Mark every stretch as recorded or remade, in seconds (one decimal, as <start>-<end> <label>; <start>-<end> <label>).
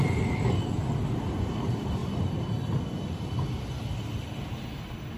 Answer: 0.0-5.2 recorded